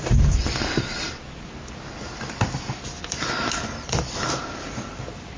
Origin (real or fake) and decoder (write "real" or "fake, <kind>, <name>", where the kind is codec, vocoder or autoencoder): fake, vocoder, BigVGAN v2